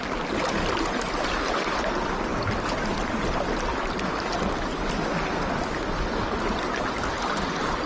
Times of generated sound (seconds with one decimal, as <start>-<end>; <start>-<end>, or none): none